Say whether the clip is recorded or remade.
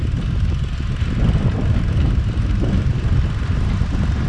recorded